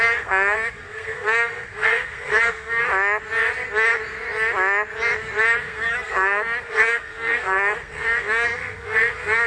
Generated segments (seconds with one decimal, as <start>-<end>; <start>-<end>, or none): 0.0-2.9; 5.6-9.5